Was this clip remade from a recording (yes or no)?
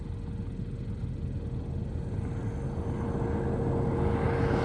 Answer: no